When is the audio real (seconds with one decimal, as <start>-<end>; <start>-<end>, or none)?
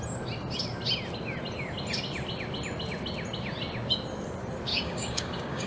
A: 0.0-4.7